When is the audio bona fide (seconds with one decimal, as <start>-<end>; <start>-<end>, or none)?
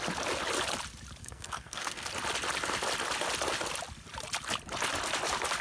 0.0-1.2; 2.1-5.6